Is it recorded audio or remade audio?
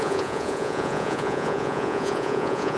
remade